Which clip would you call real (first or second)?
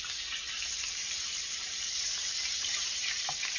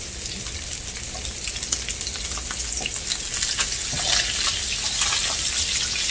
second